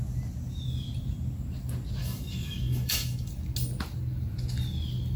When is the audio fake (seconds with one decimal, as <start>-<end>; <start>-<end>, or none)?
2.0-3.3